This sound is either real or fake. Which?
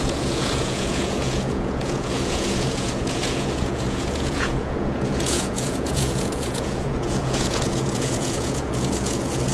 fake